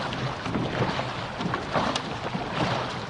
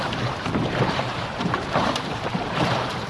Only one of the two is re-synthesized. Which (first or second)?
second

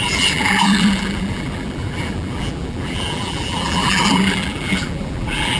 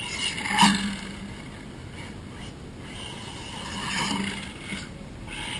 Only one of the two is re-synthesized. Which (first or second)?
first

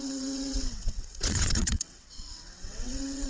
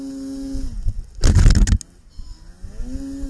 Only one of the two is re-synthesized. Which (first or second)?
first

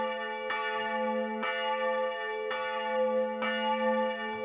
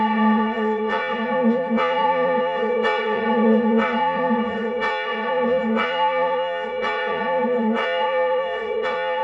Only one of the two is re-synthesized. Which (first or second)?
second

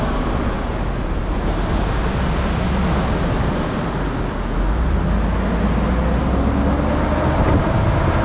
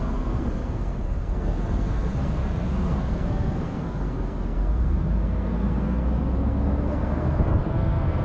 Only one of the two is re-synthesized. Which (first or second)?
second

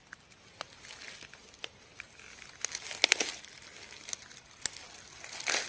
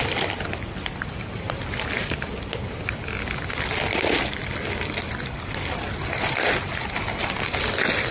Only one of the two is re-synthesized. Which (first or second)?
second